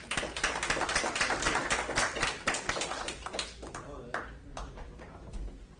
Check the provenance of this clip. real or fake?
real